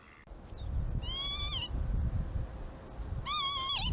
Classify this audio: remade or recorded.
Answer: recorded